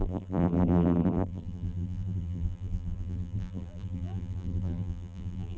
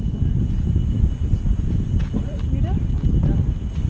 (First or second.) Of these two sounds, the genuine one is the second